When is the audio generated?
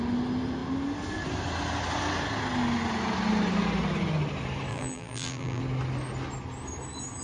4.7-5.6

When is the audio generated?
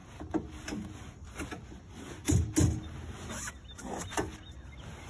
none